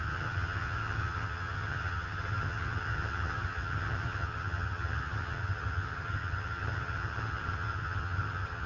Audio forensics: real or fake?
fake